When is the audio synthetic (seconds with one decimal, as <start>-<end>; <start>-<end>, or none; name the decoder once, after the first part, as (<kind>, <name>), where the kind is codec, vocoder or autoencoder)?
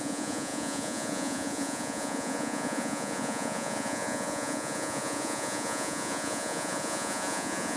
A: 0.0-7.8 (vocoder, Vocos)